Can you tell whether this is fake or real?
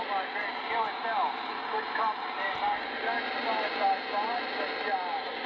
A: real